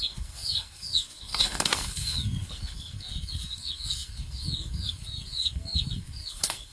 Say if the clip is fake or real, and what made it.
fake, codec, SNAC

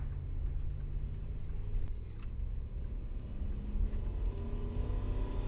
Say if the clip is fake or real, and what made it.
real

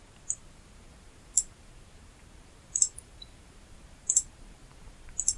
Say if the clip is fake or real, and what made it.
fake, vocoder, BigVGAN v2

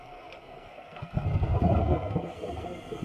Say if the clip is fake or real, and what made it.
fake, codec, SNAC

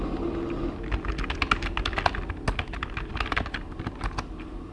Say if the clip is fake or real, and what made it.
real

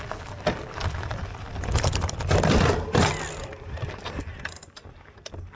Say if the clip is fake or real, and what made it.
fake, vocoder, BigVGAN v2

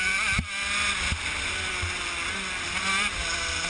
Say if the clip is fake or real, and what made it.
real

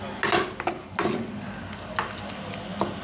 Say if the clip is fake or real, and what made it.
real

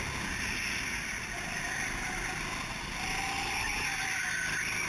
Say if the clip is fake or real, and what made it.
real